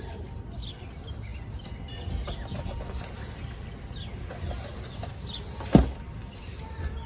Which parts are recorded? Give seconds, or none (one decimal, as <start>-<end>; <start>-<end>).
0.0-7.1